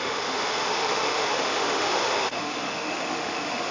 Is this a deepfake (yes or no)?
yes